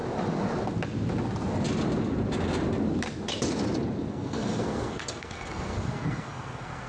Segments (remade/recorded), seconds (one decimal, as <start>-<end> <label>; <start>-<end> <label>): 0.0-4.1 recorded; 4.1-6.9 remade